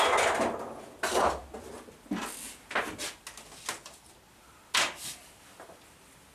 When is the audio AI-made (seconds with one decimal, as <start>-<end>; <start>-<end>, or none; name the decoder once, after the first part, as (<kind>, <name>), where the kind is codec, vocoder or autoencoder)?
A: none